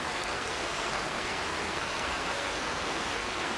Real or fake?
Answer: fake